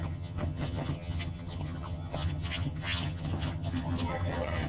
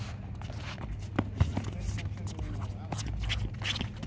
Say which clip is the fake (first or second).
first